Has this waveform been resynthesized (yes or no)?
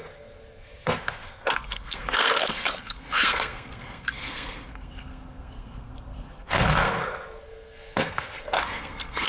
yes